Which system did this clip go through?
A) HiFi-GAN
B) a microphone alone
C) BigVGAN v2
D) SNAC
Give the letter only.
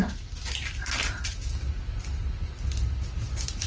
B